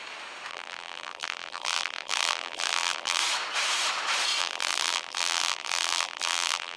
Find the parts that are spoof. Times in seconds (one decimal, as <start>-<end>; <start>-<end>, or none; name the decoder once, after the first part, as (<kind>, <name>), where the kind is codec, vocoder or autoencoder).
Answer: 0.5-3.2 (vocoder, BigVGAN v2); 4.4-6.8